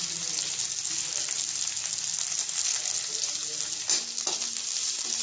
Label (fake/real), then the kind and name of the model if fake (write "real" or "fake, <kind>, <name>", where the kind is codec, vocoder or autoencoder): real